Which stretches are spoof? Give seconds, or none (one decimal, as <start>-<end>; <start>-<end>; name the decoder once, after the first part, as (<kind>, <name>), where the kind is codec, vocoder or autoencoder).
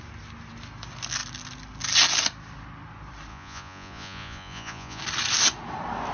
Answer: 3.3-5.0 (vocoder, Vocos)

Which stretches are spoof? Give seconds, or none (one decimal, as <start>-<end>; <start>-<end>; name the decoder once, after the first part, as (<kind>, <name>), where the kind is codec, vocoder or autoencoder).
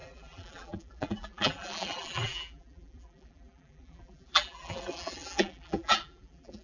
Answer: 0.0-6.6 (vocoder, BigVGAN v2)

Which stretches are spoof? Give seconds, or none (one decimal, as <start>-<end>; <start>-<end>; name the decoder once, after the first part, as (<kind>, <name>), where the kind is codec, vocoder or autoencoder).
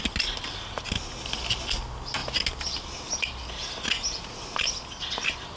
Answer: none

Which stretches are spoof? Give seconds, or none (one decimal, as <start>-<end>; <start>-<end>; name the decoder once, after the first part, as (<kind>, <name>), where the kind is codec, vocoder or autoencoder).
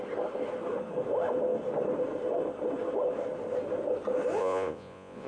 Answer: 4.4-5.3 (vocoder, Vocos)